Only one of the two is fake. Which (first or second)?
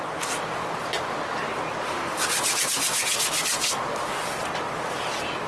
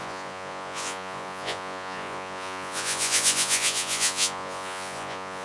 second